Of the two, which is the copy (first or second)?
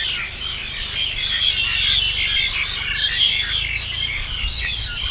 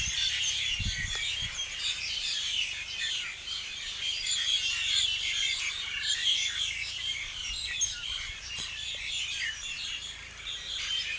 second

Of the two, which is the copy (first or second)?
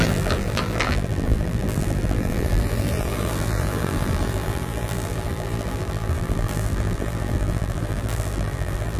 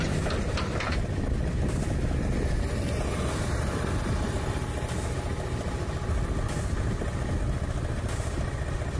first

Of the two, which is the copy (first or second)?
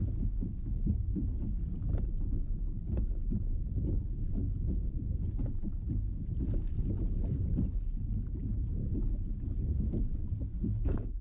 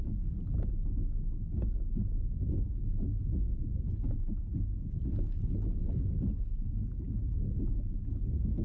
first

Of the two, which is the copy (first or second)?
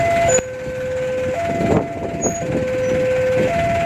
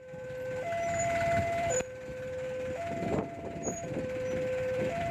second